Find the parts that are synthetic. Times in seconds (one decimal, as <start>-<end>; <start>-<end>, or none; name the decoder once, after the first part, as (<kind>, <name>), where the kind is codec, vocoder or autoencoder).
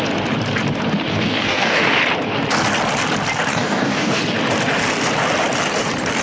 1.1-2.0 (codec, DAC); 3.5-4.2